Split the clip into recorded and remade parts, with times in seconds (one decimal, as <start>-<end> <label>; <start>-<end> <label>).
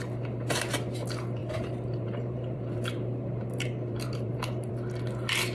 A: 0.0-1.4 recorded; 1.4-4.7 remade; 4.7-5.5 recorded